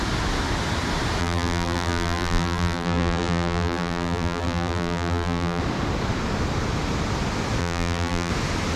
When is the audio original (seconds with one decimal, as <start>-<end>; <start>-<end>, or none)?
0.0-1.2; 5.6-7.6; 8.3-8.8